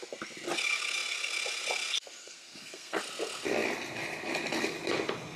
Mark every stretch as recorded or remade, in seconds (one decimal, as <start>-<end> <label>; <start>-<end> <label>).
0.0-2.2 recorded; 2.2-3.0 remade; 3.0-5.4 recorded